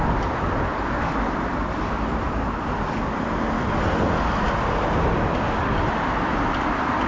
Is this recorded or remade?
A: recorded